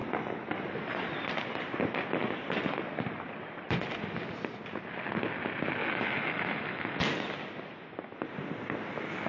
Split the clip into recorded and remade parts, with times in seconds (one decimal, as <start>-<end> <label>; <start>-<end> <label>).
0.0-5.8 recorded; 5.8-7.0 remade; 7.0-9.3 recorded